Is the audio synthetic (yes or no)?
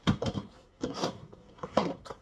yes